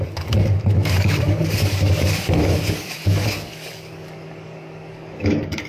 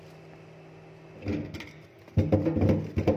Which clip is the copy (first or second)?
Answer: first